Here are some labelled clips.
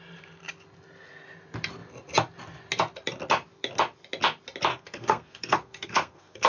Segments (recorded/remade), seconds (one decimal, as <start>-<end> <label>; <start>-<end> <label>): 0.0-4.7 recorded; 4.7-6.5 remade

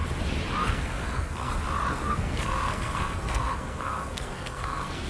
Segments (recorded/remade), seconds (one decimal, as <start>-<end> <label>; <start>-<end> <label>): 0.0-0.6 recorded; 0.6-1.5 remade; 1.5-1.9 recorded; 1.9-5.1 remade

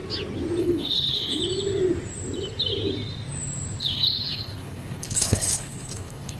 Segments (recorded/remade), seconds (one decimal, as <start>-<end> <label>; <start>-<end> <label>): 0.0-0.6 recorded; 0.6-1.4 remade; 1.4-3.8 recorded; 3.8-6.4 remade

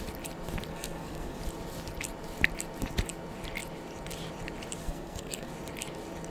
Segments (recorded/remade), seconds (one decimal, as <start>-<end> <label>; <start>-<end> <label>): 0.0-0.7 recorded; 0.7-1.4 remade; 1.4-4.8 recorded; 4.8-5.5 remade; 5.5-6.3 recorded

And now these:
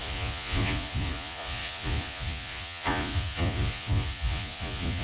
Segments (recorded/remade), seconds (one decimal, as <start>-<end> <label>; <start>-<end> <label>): 0.0-5.0 remade